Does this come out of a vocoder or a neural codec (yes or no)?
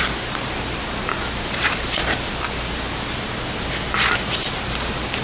no